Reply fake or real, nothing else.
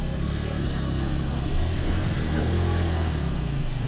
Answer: fake